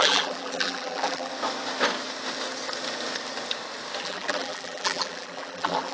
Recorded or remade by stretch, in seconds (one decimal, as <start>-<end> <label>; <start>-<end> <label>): 0.0-1.3 remade; 1.3-4.0 recorded; 4.0-5.9 remade